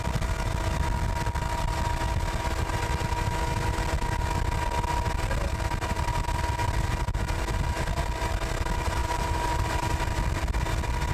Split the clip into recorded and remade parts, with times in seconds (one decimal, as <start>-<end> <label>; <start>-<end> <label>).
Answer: 0.0-9.0 recorded; 9.0-10.2 remade; 10.2-11.1 recorded